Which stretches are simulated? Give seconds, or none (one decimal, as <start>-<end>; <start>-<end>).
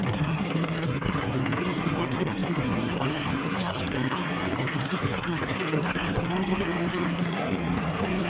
0.0-8.3